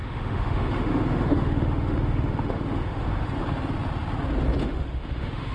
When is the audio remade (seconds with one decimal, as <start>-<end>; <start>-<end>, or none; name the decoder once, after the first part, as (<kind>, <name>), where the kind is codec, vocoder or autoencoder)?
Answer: 0.0-3.3 (autoencoder, DAC-VAE); 4.6-5.5